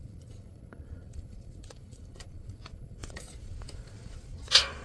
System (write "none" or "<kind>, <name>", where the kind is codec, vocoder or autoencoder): vocoder, Vocos